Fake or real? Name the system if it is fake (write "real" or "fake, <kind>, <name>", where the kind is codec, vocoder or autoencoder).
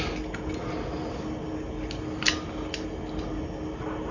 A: real